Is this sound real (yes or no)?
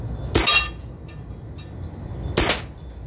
yes